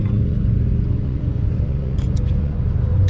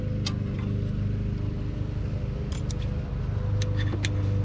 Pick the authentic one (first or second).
second